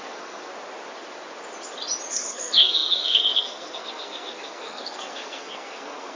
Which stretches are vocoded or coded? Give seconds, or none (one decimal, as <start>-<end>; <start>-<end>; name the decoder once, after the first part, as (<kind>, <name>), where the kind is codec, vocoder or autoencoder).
0.0-0.5 (codec, SNAC); 2.1-6.2